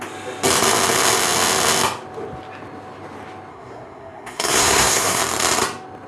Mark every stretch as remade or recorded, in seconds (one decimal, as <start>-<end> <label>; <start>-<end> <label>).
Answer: 0.0-3.5 recorded; 3.5-5.2 remade; 5.2-6.1 recorded